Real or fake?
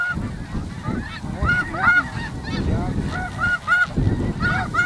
real